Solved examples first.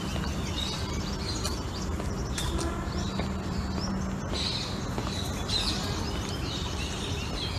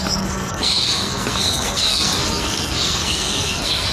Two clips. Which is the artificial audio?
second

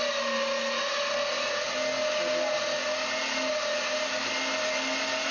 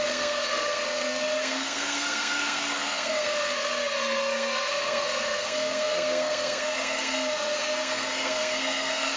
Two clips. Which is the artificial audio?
second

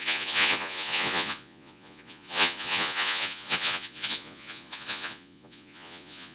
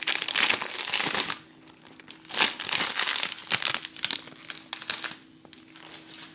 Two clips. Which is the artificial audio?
first